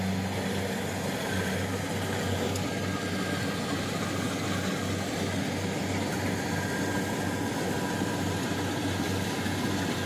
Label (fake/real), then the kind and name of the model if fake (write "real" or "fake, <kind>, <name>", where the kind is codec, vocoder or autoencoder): real